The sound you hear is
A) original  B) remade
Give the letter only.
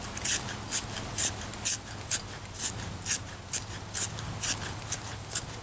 A